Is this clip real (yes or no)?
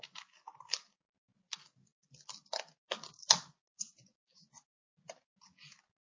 yes